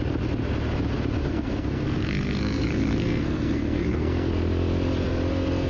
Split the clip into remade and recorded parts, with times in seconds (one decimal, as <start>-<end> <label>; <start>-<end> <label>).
0.0-1.2 recorded; 1.2-4.3 remade; 4.3-5.7 recorded

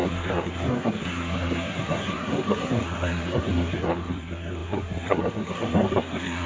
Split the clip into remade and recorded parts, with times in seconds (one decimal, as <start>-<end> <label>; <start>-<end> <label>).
0.0-6.5 remade